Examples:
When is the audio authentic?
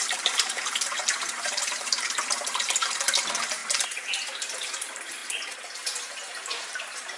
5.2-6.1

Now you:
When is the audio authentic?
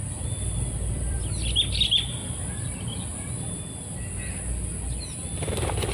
1.2-2.2; 3.3-5.9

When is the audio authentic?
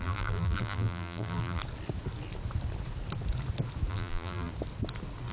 1.6-3.9; 4.5-5.3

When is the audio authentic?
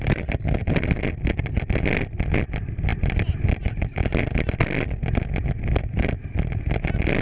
0.6-2.3; 4.0-5.8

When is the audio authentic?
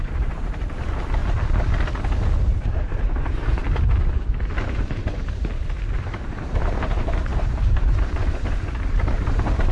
1.2-2.6; 3.6-6.0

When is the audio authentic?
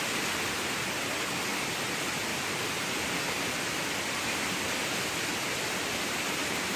0.0-5.9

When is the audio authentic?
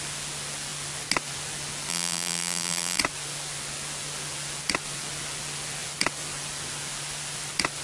0.0-1.9; 3.0-7.8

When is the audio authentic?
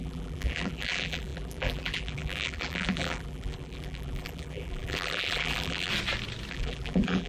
5.9-6.5